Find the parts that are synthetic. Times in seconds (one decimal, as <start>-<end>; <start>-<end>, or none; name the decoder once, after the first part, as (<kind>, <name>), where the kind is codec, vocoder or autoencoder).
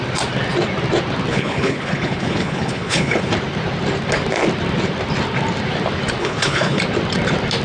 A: 1.3-3.3 (codec, HILCodec); 6.2-6.8